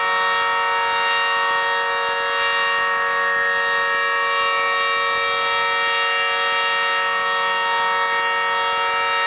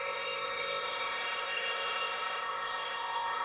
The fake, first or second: second